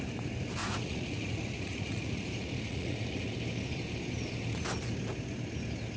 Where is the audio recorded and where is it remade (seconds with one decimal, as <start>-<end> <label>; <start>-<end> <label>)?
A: 0.0-0.6 recorded; 0.6-3.3 remade; 3.3-6.0 recorded